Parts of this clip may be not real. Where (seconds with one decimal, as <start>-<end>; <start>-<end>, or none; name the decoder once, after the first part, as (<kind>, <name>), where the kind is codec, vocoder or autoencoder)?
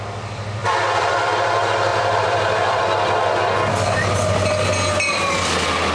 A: 0.6-1.3 (vocoder, BigVGAN v2); 1.9-2.8